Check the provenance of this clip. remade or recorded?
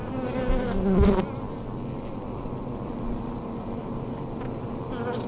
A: recorded